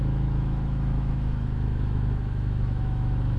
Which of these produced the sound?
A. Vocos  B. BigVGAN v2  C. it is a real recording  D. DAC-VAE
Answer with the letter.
D